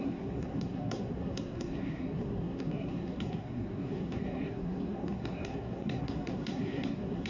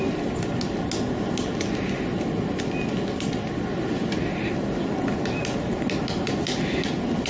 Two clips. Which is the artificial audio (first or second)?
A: first